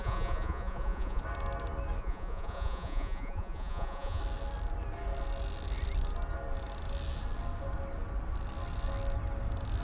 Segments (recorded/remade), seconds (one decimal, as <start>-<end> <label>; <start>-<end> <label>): 0.0-1.2 remade; 1.2-2.0 recorded; 2.0-4.2 remade; 4.2-9.8 recorded